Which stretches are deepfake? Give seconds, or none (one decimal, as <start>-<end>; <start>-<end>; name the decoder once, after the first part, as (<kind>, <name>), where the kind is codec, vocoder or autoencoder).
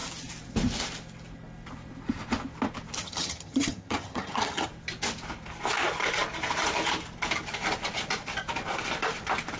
3.0-4.7 (vocoder, HiFi-GAN)